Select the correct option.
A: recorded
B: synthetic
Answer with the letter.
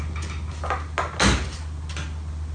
A